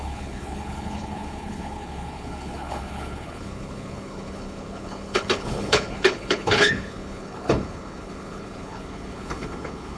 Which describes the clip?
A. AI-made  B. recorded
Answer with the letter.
A